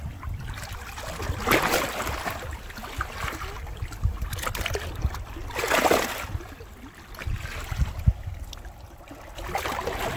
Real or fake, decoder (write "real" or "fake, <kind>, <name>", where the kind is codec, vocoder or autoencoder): real